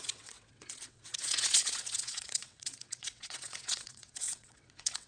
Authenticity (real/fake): fake